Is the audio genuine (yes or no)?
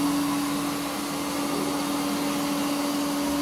yes